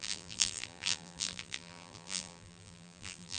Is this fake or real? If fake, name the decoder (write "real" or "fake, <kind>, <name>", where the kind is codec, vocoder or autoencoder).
fake, vocoder, BigVGAN v2